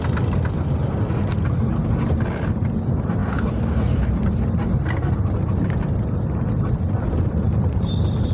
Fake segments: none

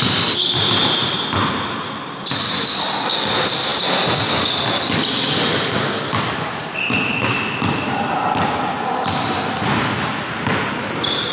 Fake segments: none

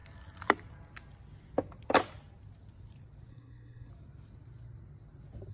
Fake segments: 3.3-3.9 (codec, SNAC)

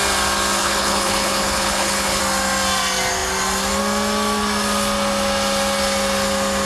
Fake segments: 0.6-2.2 (codec, HILCodec)